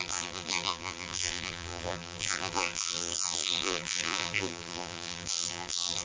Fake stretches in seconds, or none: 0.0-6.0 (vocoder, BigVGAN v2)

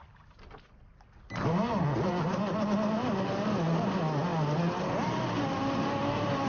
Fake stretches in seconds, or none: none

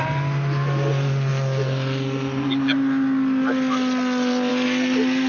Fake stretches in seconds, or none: none

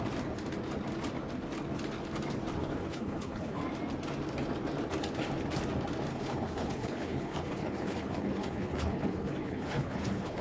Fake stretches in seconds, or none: 2.6-3.6 (codec, HILCodec); 6.1-10.4

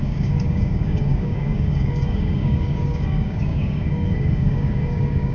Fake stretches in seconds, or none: 0.0-5.3 (codec, DAC)